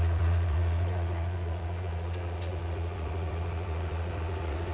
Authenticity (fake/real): fake